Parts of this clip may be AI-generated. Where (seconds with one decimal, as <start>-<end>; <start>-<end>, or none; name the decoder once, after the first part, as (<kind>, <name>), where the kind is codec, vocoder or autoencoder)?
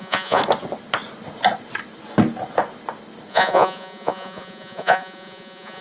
0.0-0.4 (vocoder, Vocos); 3.3-5.8